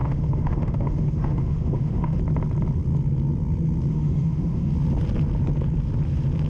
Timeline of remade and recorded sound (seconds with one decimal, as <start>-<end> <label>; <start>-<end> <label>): 0.0-2.2 remade; 2.2-3.9 recorded; 3.9-4.7 remade; 4.7-6.5 recorded